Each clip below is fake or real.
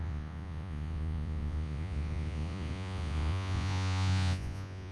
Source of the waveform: fake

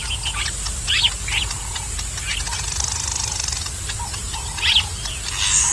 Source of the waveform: real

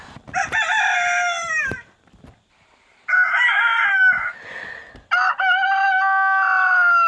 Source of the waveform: real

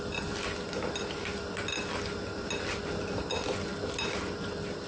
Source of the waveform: real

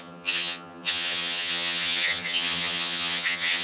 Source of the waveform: fake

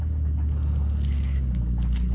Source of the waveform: real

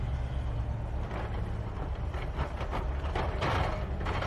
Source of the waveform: real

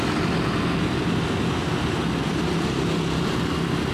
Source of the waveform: real